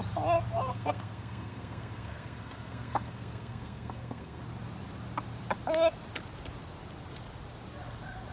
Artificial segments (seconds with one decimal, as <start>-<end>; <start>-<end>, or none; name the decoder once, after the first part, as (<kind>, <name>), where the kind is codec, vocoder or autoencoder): 0.7-4.4 (codec, SNAC)